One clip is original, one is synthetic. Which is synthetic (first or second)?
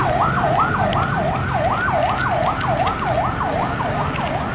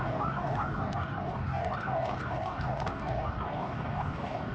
second